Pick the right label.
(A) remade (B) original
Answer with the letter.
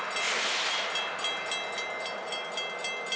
B